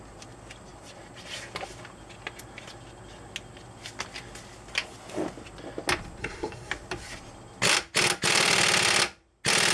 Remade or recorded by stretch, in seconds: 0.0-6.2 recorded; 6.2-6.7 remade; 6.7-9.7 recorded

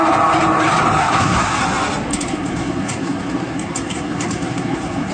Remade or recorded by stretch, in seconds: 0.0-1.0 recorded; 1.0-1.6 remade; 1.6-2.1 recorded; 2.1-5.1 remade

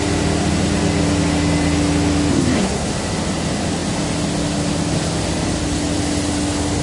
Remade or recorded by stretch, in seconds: 0.0-2.3 recorded; 2.3-2.9 remade; 2.9-6.8 recorded

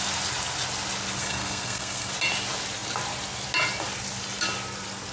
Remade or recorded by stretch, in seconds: 0.0-1.2 recorded; 1.2-2.1 remade; 2.1-5.1 recorded